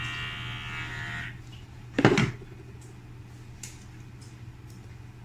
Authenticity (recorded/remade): recorded